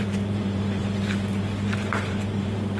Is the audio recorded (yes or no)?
no